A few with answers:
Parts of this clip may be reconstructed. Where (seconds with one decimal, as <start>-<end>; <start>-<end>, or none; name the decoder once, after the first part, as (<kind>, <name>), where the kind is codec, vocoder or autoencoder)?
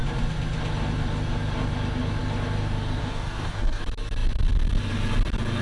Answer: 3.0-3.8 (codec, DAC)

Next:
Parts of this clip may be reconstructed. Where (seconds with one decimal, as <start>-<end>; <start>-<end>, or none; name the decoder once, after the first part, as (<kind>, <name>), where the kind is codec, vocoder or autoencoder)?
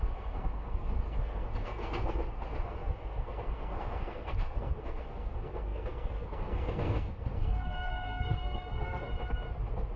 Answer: 0.0-9.1 (codec, SNAC)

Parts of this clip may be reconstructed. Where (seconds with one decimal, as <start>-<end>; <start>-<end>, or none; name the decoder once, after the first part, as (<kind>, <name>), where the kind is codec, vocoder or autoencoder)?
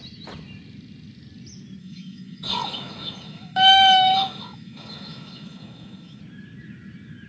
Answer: 1.8-6.2 (autoencoder, DAC-VAE)